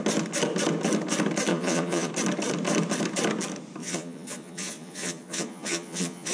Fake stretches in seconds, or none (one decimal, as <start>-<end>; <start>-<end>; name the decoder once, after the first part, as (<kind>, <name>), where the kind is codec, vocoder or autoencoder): 1.5-2.1 (vocoder, Vocos); 3.8-6.3